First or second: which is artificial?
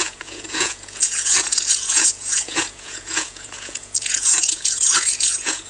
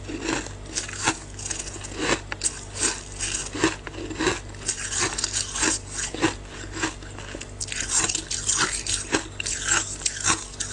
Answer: first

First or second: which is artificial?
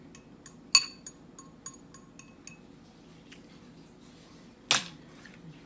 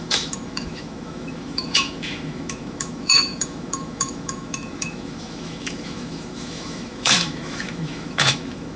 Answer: second